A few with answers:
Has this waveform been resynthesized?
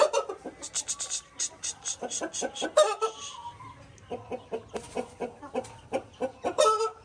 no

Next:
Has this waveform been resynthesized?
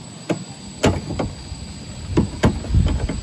no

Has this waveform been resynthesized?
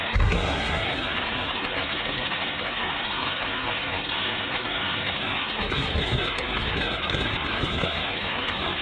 yes